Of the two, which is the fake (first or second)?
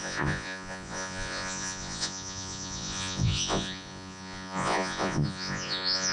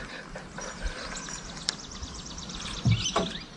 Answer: first